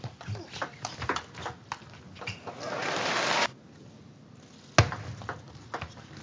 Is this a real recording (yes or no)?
yes